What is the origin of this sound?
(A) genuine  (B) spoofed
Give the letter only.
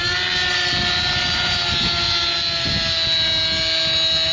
A